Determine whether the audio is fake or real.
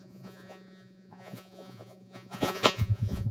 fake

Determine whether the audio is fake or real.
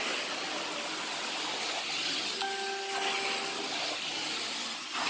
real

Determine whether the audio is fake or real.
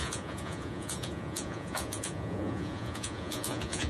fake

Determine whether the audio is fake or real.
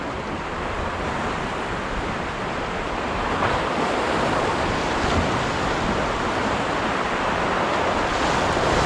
real